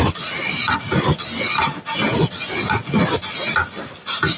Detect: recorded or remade recorded